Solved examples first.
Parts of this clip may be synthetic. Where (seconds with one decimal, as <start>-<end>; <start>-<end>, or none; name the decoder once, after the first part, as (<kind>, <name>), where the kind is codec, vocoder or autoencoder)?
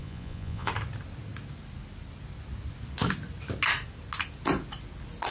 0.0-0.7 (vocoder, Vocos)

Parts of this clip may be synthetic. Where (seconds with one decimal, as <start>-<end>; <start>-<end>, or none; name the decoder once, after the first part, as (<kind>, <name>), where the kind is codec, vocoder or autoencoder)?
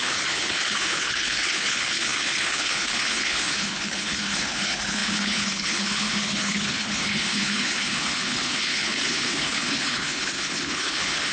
0.0-11.3 (codec, HILCodec)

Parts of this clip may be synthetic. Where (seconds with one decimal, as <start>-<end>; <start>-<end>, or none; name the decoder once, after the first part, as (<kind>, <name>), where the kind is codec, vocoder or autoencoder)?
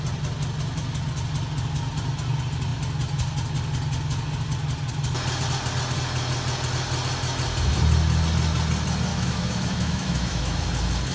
9.1-10.6 (autoencoder, DAC-VAE)